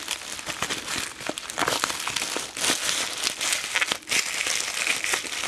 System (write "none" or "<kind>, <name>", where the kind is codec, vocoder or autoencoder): none